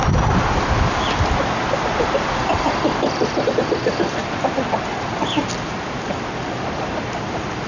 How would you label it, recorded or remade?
recorded